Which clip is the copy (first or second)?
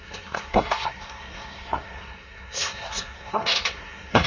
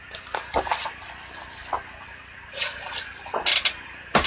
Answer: first